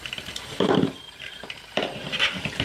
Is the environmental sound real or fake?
fake